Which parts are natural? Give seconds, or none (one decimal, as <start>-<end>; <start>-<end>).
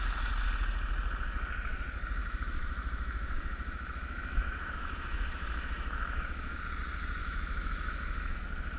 0.0-2.2; 6.6-7.2; 8.4-8.8